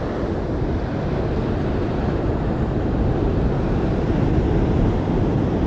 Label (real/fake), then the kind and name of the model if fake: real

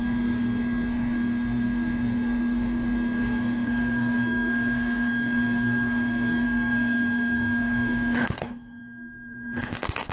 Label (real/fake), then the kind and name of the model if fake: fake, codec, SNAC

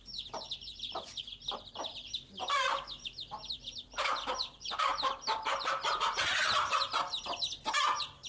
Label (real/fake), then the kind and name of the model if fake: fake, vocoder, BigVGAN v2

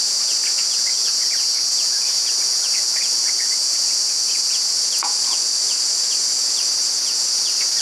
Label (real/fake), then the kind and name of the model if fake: fake, vocoder, Vocos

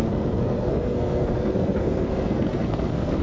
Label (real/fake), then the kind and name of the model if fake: fake, codec, SNAC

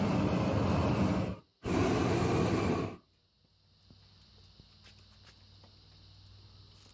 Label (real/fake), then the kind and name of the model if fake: real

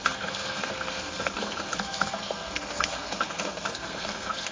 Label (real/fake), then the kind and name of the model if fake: fake, codec, SNAC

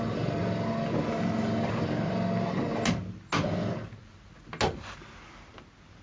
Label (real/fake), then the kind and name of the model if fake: real